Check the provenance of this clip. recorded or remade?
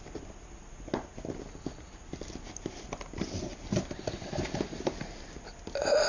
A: recorded